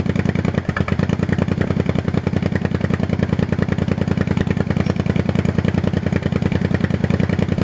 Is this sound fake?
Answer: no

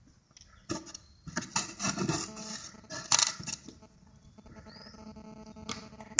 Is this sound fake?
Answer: no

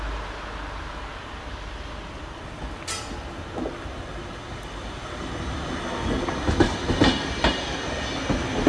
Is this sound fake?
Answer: no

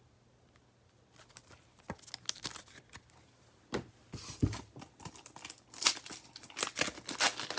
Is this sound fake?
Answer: no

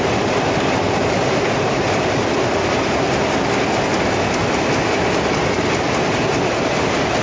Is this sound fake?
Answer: no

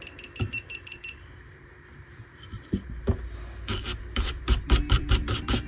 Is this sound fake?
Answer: yes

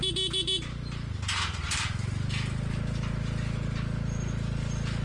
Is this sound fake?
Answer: no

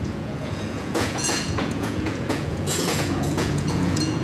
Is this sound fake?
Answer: yes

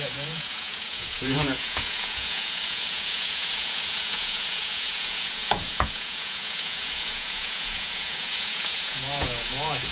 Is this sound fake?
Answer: yes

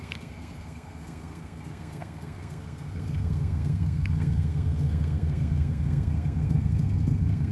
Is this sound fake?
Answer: yes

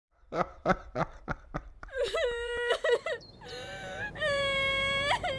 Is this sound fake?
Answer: yes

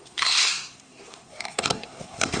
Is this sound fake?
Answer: yes